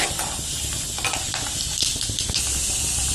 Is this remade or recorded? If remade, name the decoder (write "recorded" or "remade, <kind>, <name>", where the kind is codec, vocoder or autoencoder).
recorded